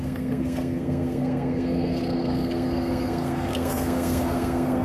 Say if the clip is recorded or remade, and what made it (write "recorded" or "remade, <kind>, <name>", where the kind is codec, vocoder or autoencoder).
remade, codec, SNAC